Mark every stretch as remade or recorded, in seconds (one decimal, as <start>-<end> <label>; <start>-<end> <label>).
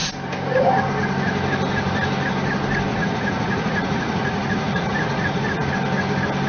0.0-2.9 recorded; 2.9-5.7 remade; 5.7-6.5 recorded